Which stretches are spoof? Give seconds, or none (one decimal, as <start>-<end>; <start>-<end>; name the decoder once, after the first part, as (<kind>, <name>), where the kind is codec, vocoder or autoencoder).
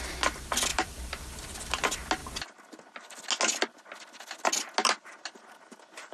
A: 0.7-1.3 (vocoder, BigVGAN v2)